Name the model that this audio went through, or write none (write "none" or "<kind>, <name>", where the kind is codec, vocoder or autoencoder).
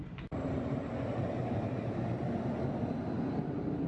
vocoder, BigVGAN v2